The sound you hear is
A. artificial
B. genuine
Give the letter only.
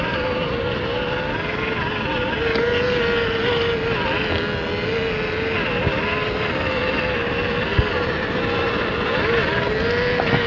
B